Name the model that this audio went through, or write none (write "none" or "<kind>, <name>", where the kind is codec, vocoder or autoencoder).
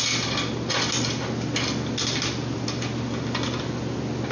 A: none